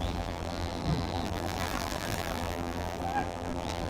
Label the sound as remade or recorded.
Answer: remade